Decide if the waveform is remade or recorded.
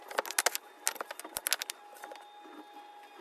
recorded